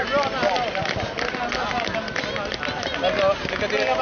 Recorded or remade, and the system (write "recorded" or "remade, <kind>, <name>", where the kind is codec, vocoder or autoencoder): recorded